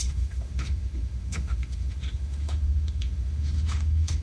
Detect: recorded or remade remade